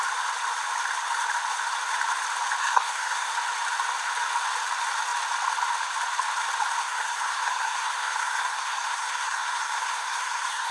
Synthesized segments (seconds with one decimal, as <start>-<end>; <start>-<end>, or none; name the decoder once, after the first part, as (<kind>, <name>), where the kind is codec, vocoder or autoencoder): 2.6-3.3 (codec, SNAC); 6.8-10.7